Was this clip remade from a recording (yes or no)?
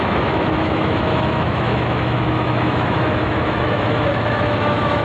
yes